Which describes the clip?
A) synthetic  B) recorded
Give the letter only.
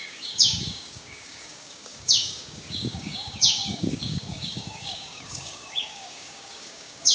A